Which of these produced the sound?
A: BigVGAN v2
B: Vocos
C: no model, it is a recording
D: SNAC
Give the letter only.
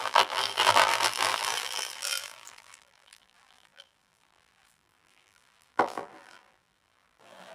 A